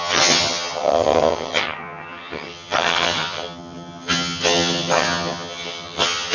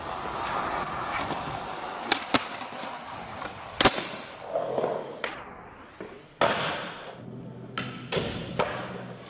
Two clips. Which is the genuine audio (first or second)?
second